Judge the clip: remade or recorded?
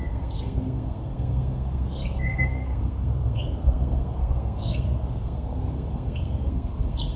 remade